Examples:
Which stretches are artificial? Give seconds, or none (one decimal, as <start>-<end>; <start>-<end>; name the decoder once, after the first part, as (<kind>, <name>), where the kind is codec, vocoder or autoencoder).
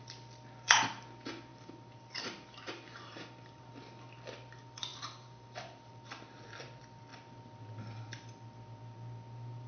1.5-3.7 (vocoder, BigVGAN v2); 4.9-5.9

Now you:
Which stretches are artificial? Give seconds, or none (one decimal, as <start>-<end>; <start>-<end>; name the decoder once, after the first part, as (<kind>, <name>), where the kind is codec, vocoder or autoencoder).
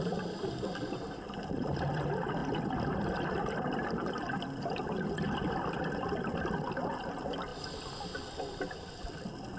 0.0-7.5 (vocoder, BigVGAN v2); 8.9-9.6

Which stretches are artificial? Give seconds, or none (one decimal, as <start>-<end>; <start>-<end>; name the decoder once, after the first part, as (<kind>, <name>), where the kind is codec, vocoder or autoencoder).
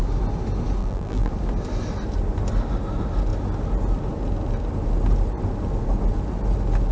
0.8-1.3 (vocoder, BigVGAN v2)